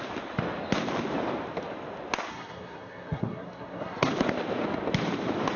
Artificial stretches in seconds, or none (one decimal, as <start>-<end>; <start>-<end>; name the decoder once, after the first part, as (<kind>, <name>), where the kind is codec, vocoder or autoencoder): 2.3-4.1 (codec, SNAC)